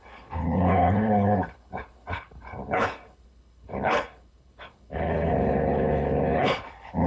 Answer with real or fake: fake